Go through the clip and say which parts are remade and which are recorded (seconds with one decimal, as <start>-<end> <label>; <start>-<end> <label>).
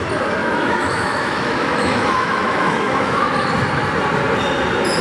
0.0-0.4 recorded; 0.4-3.4 remade; 3.4-5.0 recorded